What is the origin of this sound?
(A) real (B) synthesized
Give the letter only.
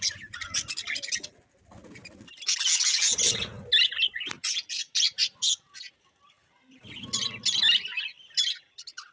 A